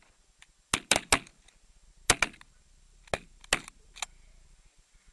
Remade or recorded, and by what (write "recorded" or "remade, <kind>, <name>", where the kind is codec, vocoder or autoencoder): recorded